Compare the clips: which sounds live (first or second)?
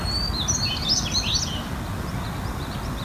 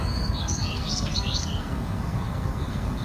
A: first